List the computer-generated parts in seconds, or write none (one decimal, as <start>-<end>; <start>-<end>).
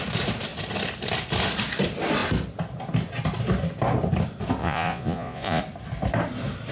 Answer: 4.6-5.6